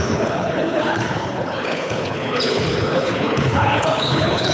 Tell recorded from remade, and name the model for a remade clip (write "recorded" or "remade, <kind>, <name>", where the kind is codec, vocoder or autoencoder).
remade, codec, HILCodec